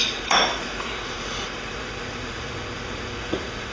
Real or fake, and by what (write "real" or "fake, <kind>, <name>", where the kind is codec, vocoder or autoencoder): fake, vocoder, Vocos